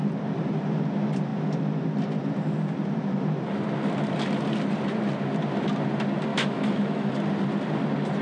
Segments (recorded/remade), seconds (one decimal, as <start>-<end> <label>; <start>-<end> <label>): 0.0-6.3 recorded; 6.3-7.1 remade; 7.1-8.2 recorded